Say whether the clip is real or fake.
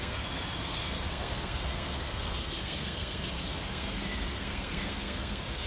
fake